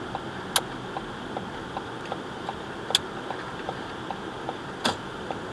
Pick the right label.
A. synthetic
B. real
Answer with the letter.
B